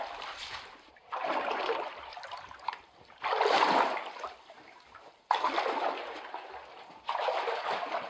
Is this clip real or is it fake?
fake